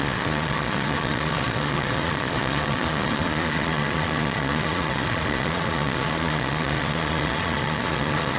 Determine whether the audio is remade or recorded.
remade